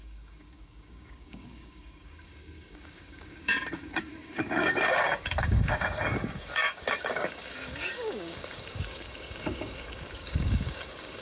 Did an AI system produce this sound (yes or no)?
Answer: yes